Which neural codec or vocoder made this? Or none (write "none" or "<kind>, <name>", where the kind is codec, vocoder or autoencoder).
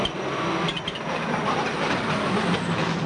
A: none